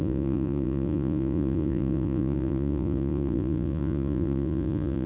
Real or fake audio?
fake